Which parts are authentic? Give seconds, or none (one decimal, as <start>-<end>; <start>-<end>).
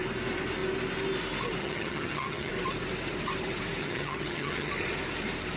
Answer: 0.0-1.6; 2.5-3.8; 4.7-5.6